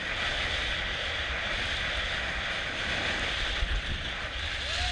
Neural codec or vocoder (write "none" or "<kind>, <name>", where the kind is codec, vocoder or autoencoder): none